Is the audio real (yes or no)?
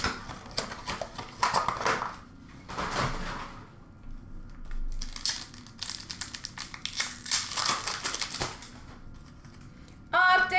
yes